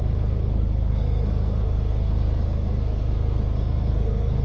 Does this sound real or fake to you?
fake